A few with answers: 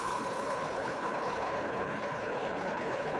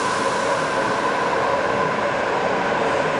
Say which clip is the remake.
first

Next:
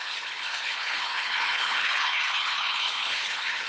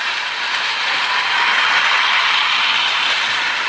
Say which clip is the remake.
first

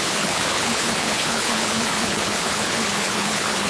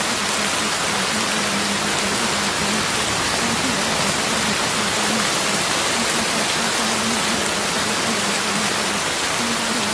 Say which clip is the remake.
first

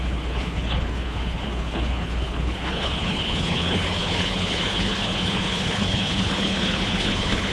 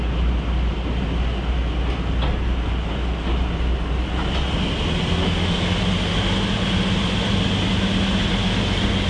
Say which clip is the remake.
first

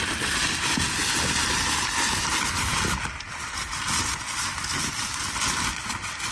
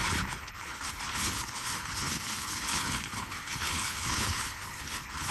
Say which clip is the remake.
second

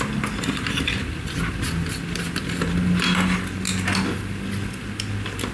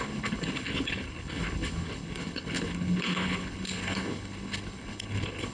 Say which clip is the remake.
second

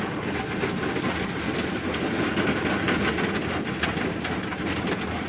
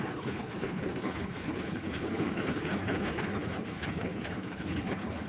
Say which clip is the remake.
second